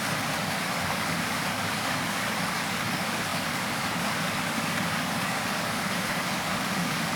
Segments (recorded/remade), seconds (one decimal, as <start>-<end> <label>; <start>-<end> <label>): 0.0-7.1 remade